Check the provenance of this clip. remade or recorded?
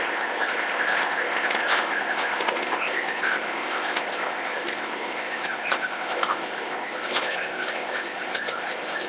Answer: remade